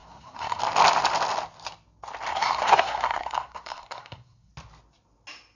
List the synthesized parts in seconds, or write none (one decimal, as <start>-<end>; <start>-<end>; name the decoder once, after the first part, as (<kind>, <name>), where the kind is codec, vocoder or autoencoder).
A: 0.0-0.6 (codec, SNAC); 2.3-4.5